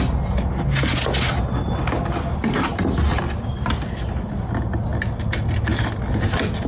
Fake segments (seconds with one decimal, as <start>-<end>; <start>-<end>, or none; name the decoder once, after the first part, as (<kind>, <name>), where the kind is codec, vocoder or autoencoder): none